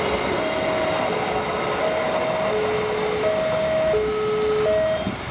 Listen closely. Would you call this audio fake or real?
real